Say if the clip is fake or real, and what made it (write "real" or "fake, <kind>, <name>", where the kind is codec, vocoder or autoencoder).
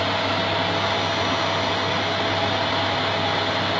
real